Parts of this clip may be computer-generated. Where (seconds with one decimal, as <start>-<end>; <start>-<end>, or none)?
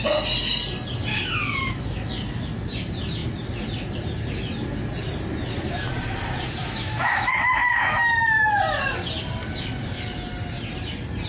1.1-2.1; 6.6-8.5